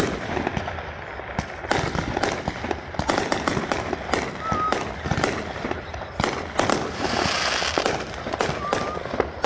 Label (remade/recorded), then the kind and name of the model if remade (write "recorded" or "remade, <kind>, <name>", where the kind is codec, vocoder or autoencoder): recorded